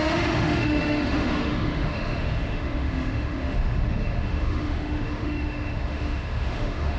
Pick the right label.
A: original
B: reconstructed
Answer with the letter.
B